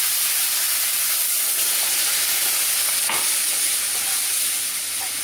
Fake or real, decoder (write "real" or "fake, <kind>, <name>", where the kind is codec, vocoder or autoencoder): real